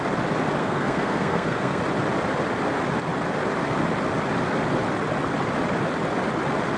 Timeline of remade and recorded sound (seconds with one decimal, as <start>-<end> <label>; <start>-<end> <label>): 0.0-0.6 recorded; 0.6-1.8 remade; 1.8-6.8 recorded